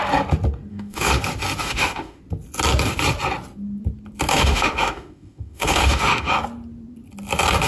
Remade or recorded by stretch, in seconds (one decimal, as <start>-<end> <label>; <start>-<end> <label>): 0.0-0.7 recorded; 0.7-1.2 remade; 1.2-1.6 recorded; 1.6-2.2 remade; 2.2-4.3 recorded; 4.3-6.3 remade; 6.3-7.7 recorded